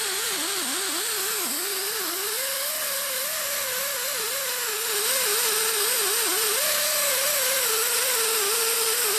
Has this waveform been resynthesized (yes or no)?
no